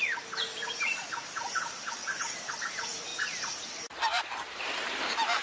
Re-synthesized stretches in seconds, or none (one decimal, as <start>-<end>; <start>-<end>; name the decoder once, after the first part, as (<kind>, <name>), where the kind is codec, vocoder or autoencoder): 0.0-2.0 (vocoder, BigVGAN v2); 2.7-3.1; 3.7-5.4